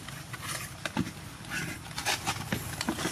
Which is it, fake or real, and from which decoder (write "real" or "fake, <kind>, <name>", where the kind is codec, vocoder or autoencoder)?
real